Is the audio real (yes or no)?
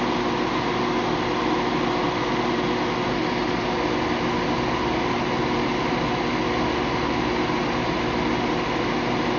yes